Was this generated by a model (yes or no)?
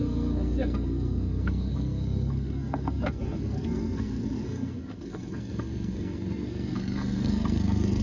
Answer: yes